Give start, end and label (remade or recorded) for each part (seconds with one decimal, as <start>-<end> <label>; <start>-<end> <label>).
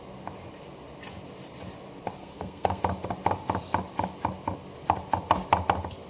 0.0-2.2 recorded; 2.2-2.8 remade; 2.8-6.1 recorded